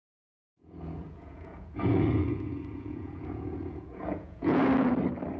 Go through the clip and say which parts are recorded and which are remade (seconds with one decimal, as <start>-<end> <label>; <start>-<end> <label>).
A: 0.0-4.6 remade; 4.6-5.4 recorded